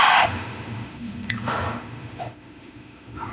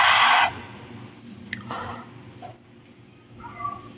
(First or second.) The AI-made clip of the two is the first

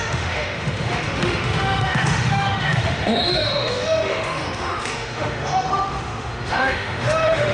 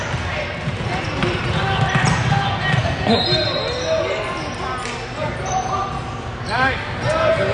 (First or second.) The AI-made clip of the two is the first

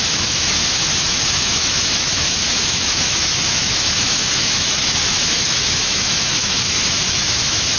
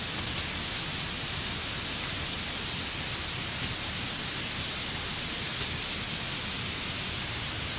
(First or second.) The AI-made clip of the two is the first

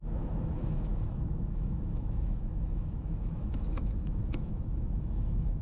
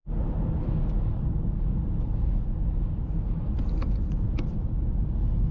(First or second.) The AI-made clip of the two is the first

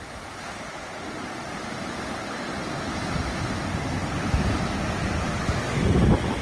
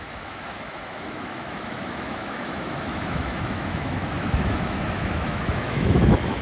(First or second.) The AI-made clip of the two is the second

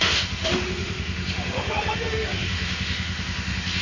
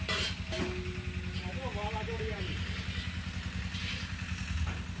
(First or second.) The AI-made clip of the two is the first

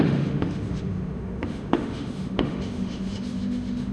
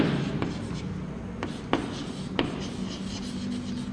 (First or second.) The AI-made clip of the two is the first